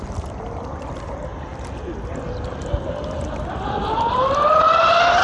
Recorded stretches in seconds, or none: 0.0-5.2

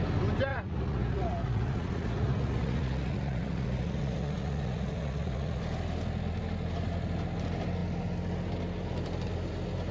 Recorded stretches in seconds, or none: 0.0-0.5; 5.6-9.9

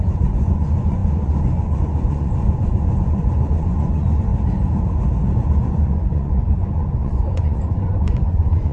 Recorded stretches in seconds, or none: 4.3-5.5

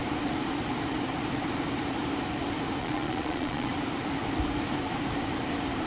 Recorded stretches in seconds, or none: 0.0-2.8; 3.7-5.9

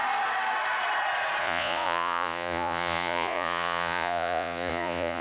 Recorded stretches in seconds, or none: 0.0-1.4

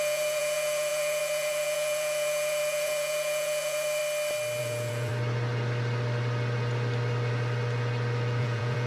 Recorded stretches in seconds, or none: 4.0-4.6; 5.1-8.4

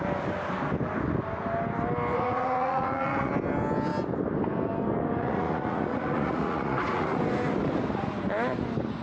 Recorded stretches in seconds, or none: 0.0-2.1; 3.3-5.2; 7.2-9.0